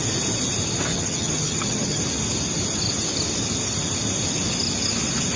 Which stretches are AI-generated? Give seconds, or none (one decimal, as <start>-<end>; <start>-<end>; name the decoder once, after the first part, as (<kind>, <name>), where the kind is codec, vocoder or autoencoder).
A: 0.9-2.0 (vocoder, HiFi-GAN)